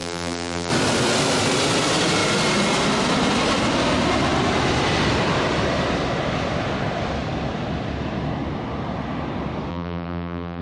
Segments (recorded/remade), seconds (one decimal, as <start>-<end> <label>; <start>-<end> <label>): 0.0-0.7 remade; 0.7-9.7 recorded; 9.7-10.6 remade